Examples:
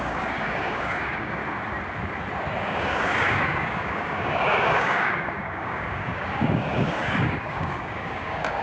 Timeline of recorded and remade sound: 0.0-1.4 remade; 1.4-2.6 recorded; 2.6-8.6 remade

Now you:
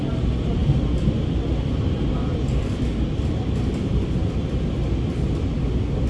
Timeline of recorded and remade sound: 0.0-6.1 recorded